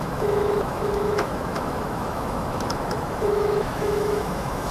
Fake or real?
fake